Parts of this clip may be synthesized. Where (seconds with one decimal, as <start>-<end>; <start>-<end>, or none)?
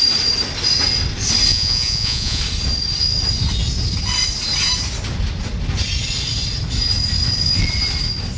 1.5-2.4